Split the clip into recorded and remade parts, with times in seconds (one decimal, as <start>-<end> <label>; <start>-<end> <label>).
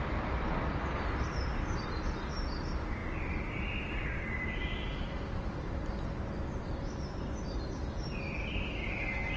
0.0-9.4 recorded